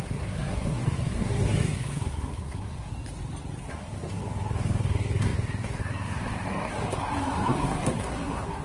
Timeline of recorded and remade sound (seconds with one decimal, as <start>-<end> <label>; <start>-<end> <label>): 0.0-2.9 remade; 2.9-3.6 recorded; 3.6-8.6 remade